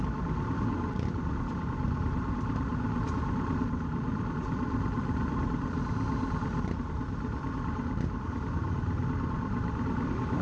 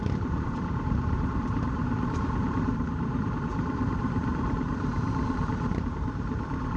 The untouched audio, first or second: first